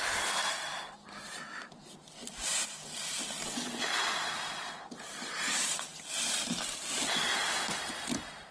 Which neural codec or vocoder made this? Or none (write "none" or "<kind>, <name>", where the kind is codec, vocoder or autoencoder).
none